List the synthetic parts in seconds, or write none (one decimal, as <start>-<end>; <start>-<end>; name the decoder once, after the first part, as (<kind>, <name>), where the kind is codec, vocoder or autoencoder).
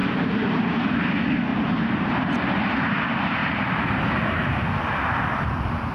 0.0-1.1 (vocoder, BigVGAN v2); 1.5-2.3; 3.4-4.0